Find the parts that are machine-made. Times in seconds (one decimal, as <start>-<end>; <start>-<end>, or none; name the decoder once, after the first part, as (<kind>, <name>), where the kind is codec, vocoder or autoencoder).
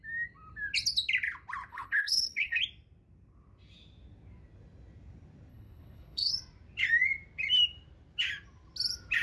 1.7-2.6 (codec, HILCodec); 5.5-6.3